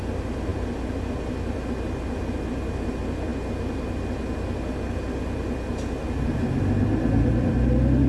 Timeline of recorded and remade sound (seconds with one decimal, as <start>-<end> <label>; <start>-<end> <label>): 0.0-8.1 recorded